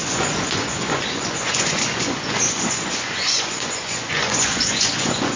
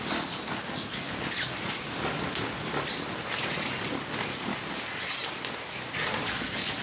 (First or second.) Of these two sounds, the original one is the second